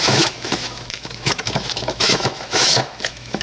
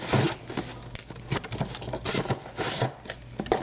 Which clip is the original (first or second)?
second